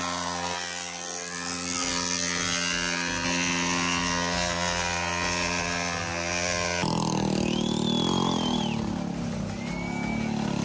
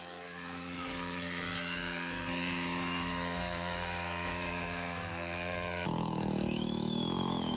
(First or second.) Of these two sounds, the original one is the first